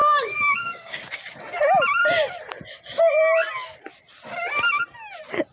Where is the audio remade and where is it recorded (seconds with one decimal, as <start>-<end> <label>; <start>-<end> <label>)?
0.0-1.1 remade; 1.1-5.5 recorded